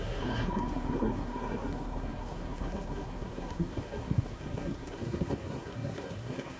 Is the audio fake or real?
fake